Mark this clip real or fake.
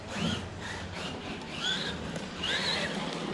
real